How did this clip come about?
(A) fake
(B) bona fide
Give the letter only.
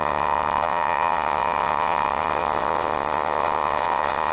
A